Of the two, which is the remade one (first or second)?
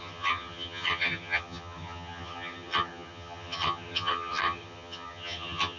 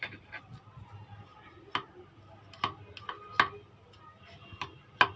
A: first